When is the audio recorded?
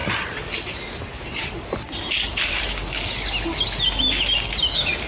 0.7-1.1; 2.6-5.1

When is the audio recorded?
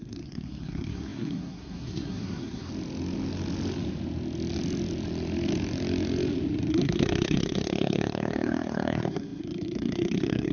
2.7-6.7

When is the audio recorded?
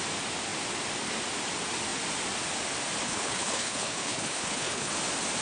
0.0-3.0; 4.9-5.4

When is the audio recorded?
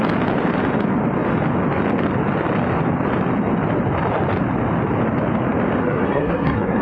0.0-5.8